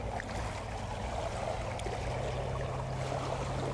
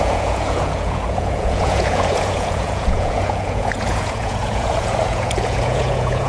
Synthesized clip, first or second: second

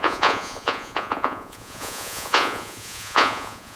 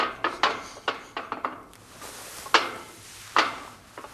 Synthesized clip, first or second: first